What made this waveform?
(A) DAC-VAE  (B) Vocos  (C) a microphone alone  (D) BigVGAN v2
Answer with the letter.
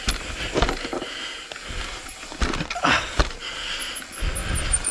C